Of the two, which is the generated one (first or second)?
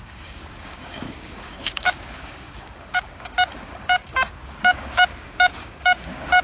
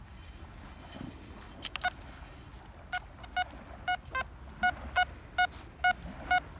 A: first